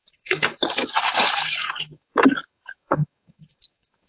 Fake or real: fake